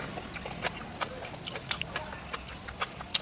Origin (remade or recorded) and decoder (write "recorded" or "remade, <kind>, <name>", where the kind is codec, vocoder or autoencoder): recorded